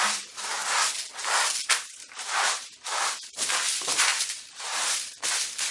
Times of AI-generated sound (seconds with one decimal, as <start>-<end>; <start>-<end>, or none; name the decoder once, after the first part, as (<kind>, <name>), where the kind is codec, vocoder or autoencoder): 0.0-0.6 (vocoder, BigVGAN v2); 1.7-5.7